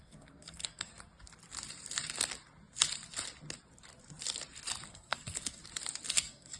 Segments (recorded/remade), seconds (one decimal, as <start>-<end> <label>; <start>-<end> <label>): 0.0-0.9 remade; 0.9-4.9 recorded; 4.9-5.6 remade; 5.6-6.1 recorded; 6.1-6.6 remade